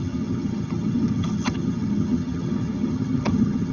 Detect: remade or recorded remade